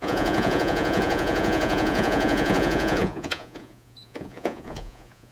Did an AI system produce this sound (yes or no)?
yes